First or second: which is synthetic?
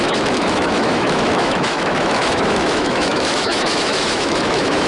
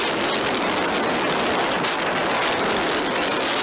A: first